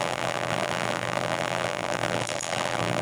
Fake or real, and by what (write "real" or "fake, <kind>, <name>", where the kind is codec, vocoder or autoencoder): fake, vocoder, BigVGAN v2